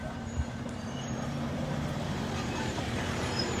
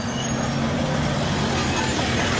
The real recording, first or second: second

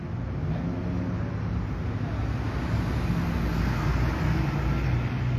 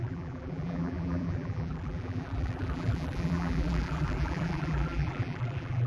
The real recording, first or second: first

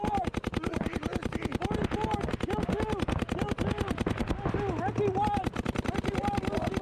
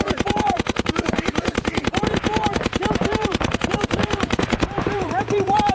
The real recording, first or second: first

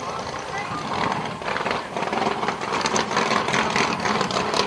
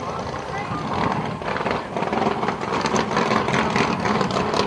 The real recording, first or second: second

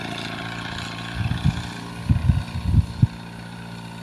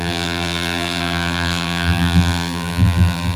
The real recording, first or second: first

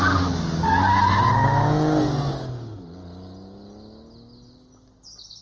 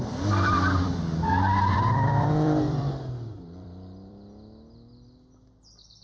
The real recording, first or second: first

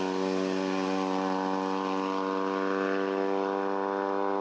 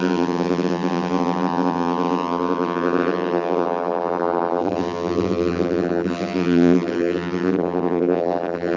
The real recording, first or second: first